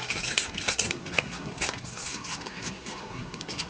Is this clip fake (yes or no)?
yes